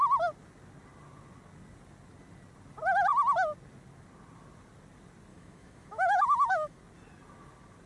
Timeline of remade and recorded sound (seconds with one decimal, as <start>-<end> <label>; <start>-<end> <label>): 0.0-5.3 recorded; 5.3-6.8 remade; 6.8-7.9 recorded